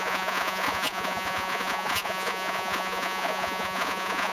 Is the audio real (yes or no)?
no